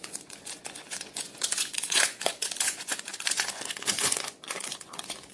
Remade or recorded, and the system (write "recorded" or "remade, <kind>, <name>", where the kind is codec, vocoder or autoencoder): remade, vocoder, Vocos